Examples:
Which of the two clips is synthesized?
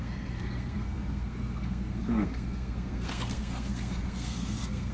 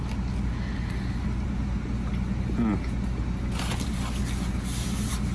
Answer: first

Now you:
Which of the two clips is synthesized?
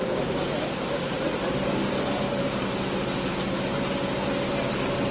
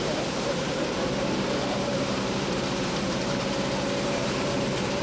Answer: second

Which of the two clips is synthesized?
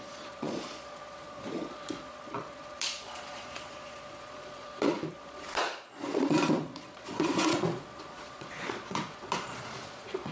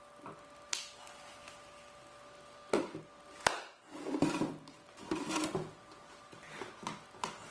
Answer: first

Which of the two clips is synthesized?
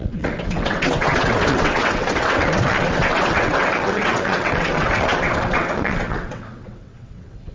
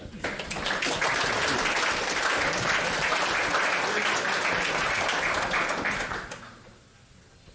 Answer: first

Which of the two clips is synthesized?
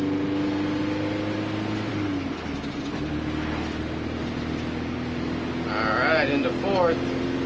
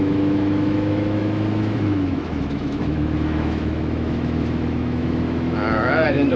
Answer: second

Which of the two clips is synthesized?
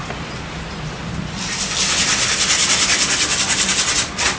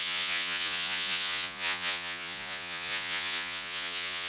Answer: second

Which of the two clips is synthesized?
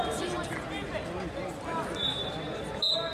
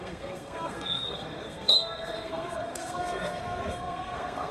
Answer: second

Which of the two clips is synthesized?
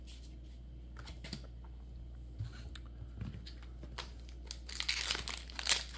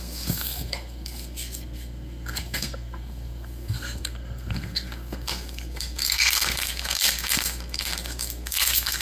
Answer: second